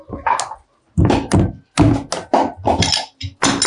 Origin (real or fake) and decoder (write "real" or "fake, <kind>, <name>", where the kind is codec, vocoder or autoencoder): real